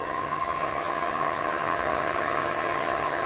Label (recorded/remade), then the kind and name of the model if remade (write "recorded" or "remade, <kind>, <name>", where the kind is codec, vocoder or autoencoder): remade, vocoder, HiFi-GAN